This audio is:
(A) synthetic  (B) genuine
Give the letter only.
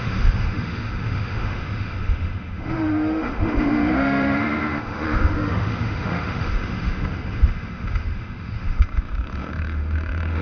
A